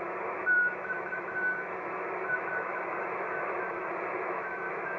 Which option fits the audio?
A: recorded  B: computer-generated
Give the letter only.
B